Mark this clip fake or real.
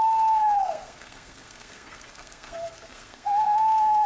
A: fake